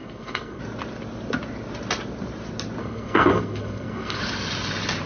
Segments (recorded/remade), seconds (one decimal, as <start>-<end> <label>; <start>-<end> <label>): 0.0-0.6 remade; 0.6-2.8 recorded; 2.8-4.2 remade; 4.2-5.1 recorded